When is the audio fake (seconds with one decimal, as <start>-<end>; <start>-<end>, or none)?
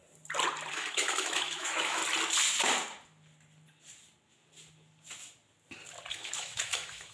0.7-2.0; 6.1-7.1